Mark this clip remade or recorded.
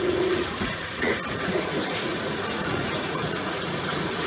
remade